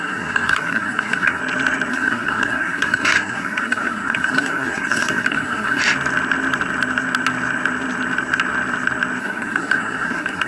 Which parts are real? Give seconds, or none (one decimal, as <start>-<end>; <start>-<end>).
1.4-1.9; 5.8-9.2